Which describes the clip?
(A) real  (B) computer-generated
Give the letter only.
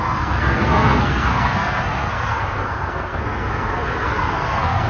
B